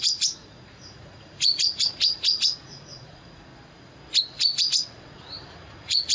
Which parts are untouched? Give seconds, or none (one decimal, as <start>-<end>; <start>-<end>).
3.5-4.2